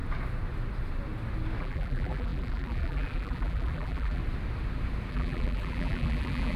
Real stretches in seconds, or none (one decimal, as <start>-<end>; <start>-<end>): 0.0-1.6; 4.2-5.1